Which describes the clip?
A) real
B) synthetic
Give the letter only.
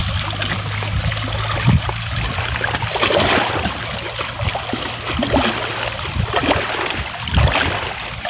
A